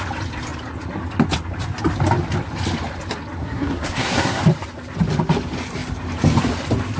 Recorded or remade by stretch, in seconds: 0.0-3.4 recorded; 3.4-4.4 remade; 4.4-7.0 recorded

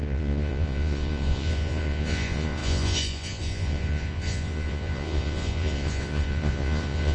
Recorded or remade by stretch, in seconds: 0.0-7.1 remade

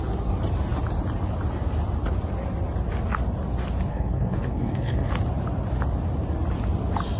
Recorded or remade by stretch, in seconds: 0.0-3.9 recorded; 3.9-5.1 remade; 5.1-7.2 recorded